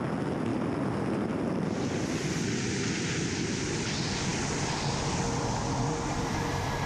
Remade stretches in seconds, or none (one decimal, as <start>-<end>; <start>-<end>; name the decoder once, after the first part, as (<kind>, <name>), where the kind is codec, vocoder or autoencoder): 0.5-2.7 (vocoder, BigVGAN v2); 4.3-6.9